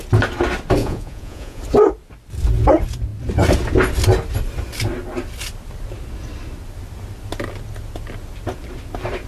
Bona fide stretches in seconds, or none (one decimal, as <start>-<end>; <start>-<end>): 0.0-0.8; 1.6-9.3